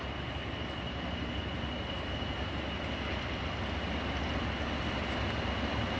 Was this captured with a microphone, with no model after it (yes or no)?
yes